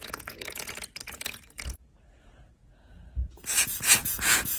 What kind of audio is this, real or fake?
fake